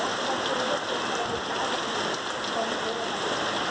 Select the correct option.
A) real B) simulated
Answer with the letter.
A